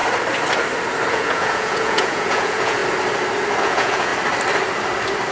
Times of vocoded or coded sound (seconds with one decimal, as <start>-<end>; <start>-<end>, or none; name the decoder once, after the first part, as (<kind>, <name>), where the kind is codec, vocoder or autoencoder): 1.1-2.8 (vocoder, Vocos); 3.6-4.1

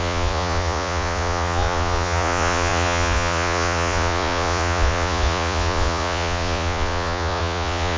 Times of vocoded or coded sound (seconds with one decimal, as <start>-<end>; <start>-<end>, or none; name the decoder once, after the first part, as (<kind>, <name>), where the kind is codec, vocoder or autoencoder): 0.0-8.0 (vocoder, Vocos)

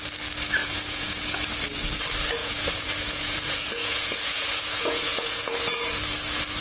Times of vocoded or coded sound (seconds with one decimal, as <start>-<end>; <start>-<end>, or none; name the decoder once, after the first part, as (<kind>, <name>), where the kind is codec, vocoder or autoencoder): 0.6-1.2 (vocoder, Vocos); 2.4-5.6

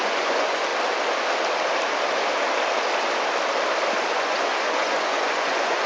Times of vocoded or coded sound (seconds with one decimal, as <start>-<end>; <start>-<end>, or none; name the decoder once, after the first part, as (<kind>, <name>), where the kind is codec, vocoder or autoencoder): 0.0-0.7 (vocoder, Vocos); 4.1-5.9

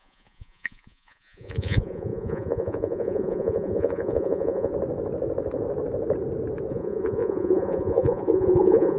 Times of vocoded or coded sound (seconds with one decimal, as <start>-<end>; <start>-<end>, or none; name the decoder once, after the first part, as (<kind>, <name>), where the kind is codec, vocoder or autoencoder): 0.0-4.7 (vocoder, Vocos); 6.7-9.0

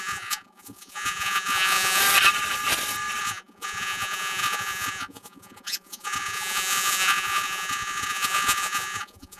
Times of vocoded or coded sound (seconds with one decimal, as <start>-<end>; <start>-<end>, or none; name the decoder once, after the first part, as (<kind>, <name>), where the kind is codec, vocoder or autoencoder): 0.0-2.0 (vocoder, Vocos); 3.2-9.4